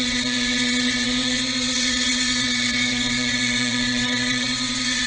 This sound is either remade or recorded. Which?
remade